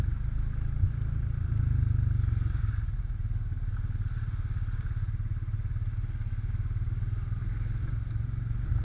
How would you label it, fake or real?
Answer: real